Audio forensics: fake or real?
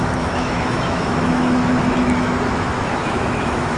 fake